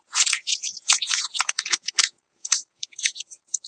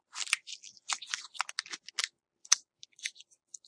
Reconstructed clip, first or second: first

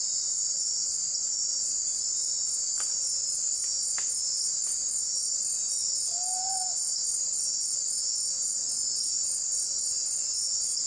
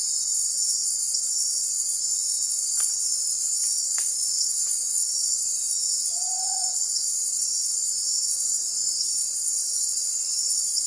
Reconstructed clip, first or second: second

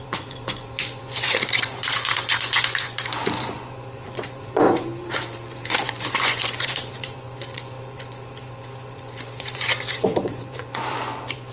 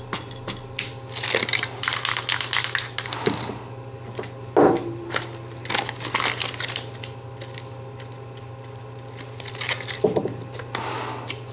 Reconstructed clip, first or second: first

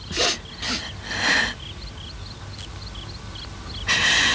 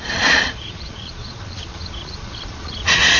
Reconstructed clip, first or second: second